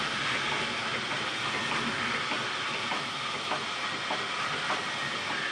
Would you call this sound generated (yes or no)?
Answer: no